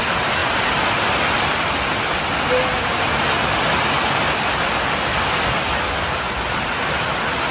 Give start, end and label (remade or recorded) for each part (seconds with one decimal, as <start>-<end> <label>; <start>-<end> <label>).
0.0-7.5 recorded